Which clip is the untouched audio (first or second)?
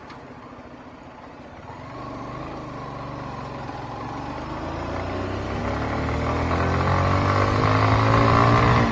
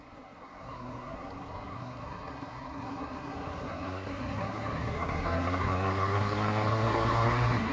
first